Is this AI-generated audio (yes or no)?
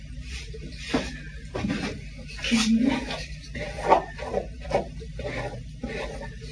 yes